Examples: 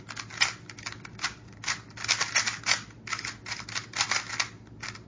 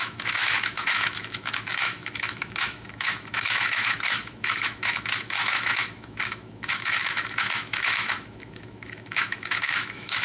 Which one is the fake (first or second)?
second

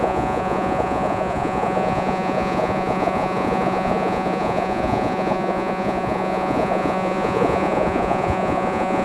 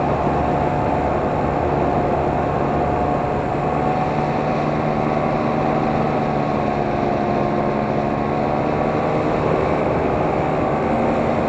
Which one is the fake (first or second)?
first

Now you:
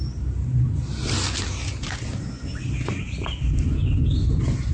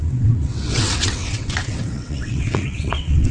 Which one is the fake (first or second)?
second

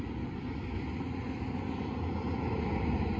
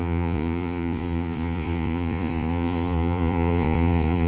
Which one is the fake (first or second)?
second